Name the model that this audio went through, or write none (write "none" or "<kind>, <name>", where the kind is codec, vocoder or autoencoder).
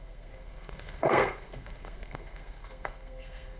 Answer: codec, SNAC